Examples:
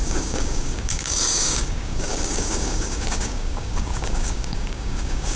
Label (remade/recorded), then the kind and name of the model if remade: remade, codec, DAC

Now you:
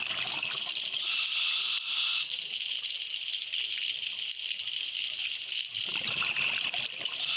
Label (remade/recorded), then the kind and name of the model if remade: recorded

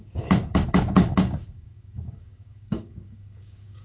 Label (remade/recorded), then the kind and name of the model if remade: remade, codec, DAC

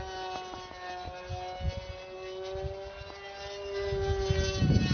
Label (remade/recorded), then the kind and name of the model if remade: recorded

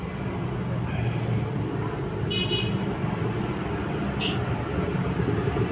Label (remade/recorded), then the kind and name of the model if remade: recorded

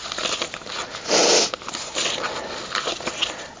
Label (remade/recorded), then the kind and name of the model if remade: recorded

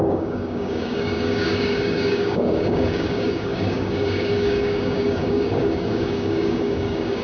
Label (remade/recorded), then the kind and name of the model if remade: remade, codec, DAC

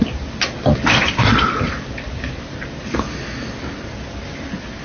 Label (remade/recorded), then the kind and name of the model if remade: recorded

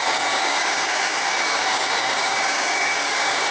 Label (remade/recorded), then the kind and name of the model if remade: remade, codec, DAC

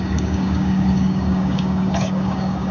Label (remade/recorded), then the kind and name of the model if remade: remade, codec, DAC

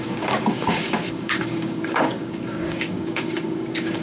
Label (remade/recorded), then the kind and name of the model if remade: remade, codec, DAC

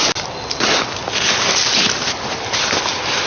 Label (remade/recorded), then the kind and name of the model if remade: recorded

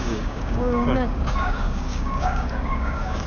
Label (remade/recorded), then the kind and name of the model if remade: remade, codec, DAC